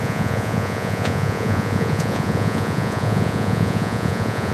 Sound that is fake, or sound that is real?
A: fake